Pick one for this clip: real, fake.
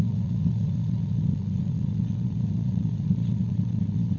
fake